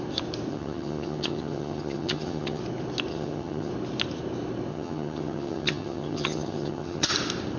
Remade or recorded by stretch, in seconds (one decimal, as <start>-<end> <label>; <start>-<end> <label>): 0.0-0.5 recorded; 0.5-2.6 remade; 2.6-3.1 recorded; 3.1-3.7 remade; 3.7-4.7 recorded; 4.7-7.1 remade; 7.1-7.6 recorded